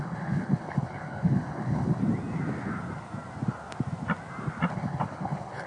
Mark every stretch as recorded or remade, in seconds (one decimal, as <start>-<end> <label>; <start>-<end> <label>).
0.0-2.0 remade; 2.0-4.7 recorded; 4.7-5.7 remade